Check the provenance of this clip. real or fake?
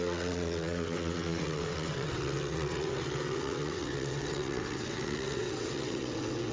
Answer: fake